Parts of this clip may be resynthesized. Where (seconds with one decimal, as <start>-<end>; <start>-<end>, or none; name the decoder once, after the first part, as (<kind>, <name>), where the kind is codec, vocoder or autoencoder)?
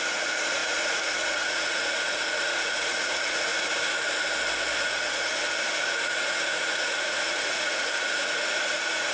0.0-3.5 (vocoder, Vocos); 4.8-5.3; 5.8-9.1